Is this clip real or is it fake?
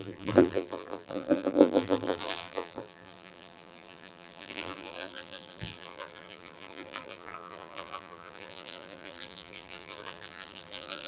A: fake